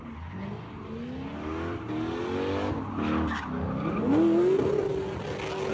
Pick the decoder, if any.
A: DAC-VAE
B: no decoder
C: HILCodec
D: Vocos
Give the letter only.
B